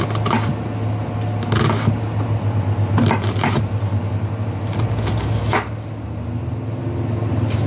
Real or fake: real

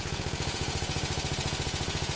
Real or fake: fake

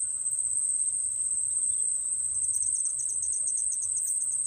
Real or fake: real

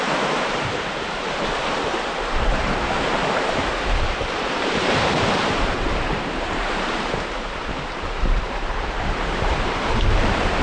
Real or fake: fake